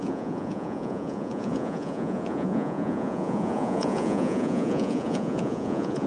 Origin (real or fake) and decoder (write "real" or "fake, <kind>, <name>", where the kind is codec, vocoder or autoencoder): fake, vocoder, Vocos